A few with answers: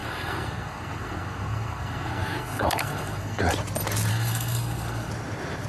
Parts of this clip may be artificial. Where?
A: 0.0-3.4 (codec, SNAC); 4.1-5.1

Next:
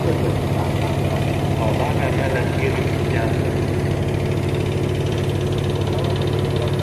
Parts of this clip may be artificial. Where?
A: none